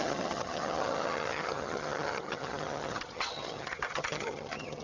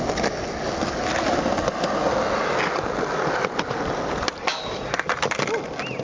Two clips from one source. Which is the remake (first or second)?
first